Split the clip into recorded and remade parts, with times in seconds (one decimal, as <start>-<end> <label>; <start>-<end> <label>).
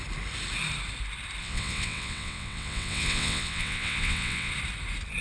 0.0-1.4 recorded; 1.4-4.5 remade; 4.5-5.2 recorded